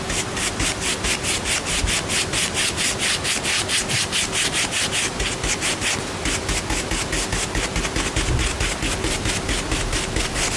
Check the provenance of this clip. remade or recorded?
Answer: recorded